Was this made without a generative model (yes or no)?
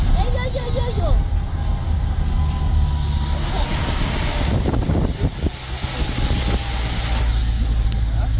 yes